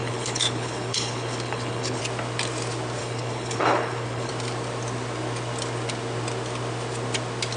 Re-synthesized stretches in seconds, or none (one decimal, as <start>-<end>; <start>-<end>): 0.0-2.0; 3.0-4.3